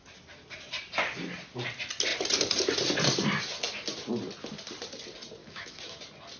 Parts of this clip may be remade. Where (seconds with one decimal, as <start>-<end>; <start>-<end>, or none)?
5.4-6.0